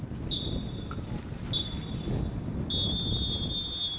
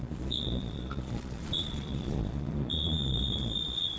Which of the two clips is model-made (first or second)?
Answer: second